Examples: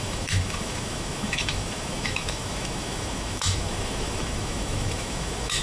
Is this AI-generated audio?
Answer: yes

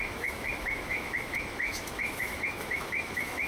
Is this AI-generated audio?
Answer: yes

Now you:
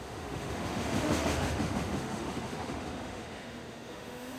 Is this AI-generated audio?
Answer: yes